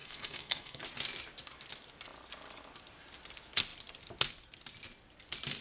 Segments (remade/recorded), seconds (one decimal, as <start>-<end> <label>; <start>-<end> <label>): 0.0-0.8 remade; 0.8-5.6 recorded